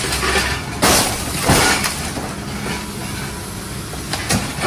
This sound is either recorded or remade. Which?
recorded